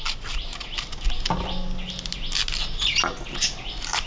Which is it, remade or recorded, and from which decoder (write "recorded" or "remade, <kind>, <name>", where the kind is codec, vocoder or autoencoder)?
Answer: recorded